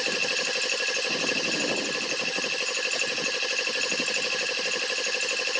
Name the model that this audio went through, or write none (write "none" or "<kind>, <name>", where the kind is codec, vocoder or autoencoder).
none